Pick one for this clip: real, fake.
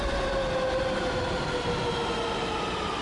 real